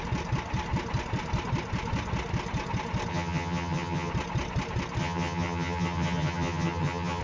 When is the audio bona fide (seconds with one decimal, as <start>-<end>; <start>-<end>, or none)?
0.0-3.1; 4.1-5.0